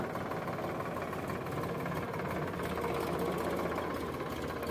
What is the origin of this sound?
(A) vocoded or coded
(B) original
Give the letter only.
B